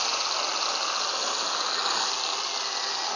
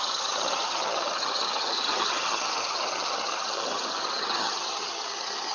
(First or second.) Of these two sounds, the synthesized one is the second